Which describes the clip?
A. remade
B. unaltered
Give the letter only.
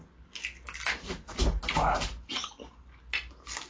B